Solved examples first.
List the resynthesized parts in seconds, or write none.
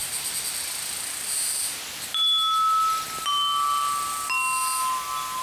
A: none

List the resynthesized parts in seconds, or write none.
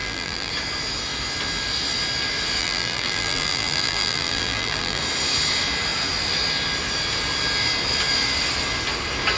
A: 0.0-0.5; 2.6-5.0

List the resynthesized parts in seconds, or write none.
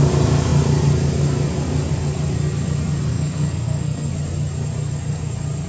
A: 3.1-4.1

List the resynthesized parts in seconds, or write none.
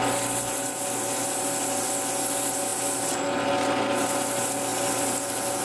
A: none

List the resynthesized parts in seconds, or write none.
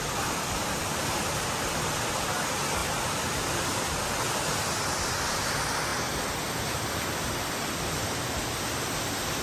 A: none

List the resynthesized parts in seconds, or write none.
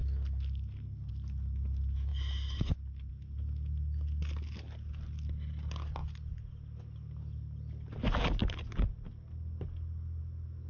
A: none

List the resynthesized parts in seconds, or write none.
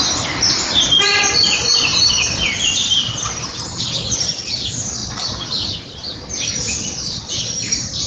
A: 1.9-2.6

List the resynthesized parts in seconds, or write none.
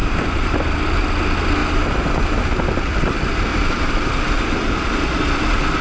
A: 0.0-1.1; 1.6-2.2; 3.5-4.1